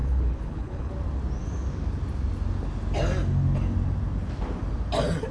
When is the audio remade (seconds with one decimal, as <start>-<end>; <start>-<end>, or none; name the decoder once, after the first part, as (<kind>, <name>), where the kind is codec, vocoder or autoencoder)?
0.0-0.9 (codec, HILCodec)